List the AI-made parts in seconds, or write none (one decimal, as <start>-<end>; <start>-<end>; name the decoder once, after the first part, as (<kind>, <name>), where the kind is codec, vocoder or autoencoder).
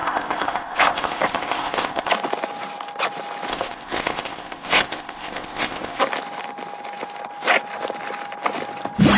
0.0-2.1 (codec, ZipCodec); 3.5-6.0